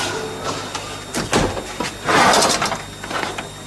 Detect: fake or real real